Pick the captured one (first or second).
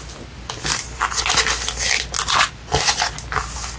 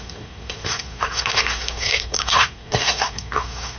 first